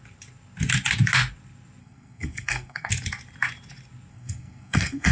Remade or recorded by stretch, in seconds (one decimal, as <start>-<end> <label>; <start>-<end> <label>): 0.0-1.8 recorded; 1.8-2.9 remade; 2.9-4.1 recorded; 4.1-5.1 remade